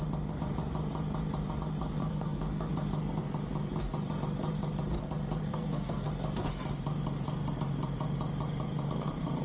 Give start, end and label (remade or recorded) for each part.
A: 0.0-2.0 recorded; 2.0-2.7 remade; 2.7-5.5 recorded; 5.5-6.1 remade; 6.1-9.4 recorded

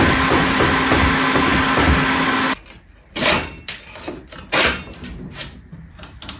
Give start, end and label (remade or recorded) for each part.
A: 0.0-6.4 recorded

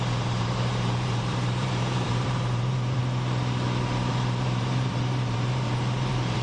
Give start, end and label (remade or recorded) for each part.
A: 0.0-3.0 remade; 3.0-4.1 recorded; 4.1-6.4 remade

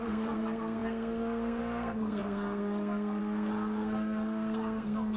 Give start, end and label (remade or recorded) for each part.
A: 0.0-5.2 remade